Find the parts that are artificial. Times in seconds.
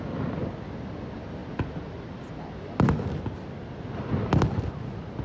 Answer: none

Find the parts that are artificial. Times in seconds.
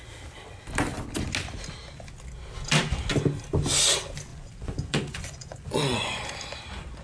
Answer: 4.3-6.2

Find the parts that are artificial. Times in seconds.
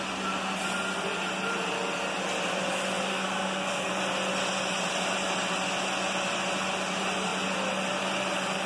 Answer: 3.1-3.9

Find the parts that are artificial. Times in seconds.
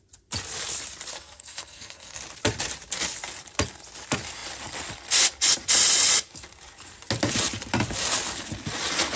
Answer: 1.1-2.2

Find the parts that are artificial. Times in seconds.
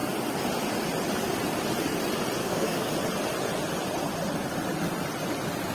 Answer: 2.4-2.9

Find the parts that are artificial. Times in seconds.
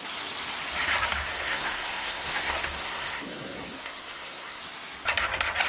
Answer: 1.2-4.6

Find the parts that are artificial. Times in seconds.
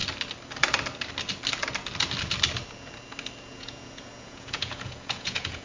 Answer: 3.4-5.6